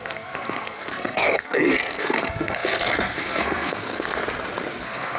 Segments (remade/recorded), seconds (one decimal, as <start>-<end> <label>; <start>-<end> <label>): 0.0-4.2 remade; 4.2-4.7 recorded; 4.7-5.2 remade